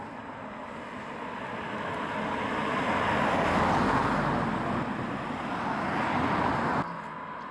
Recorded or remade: recorded